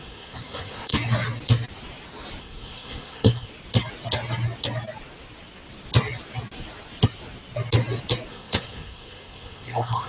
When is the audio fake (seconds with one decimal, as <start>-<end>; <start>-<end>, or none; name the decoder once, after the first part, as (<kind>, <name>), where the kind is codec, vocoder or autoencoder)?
0.0-0.9 (codec, SNAC); 2.4-3.5; 8.3-10.1

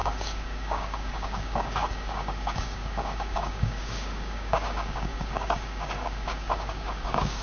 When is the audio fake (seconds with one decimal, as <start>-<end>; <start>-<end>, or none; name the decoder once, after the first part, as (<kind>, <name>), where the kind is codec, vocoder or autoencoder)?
0.0-7.4 (codec, DAC)